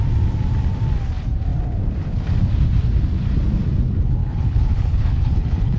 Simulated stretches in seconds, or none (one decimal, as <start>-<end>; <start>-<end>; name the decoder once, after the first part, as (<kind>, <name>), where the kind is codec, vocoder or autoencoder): 4.2-5.8 (codec, HILCodec)